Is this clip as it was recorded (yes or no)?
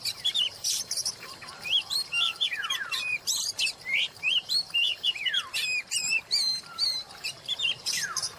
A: no